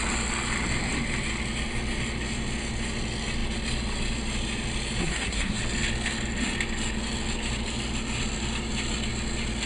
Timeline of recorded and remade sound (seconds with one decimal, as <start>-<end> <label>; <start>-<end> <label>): 0.0-5.0 recorded; 5.0-5.6 remade; 5.6-9.7 recorded